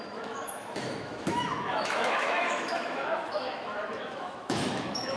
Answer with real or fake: fake